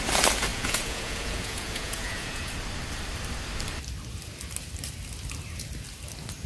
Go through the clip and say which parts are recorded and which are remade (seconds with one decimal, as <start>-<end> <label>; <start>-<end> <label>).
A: 0.0-0.5 recorded; 0.5-2.5 remade; 2.5-6.5 recorded